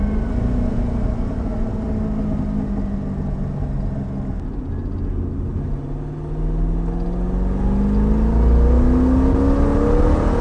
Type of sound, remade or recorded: recorded